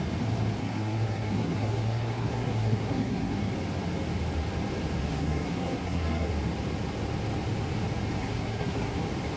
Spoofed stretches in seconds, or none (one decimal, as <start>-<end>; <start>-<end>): 0.6-3.5; 5.0-6.3; 8.2-9.0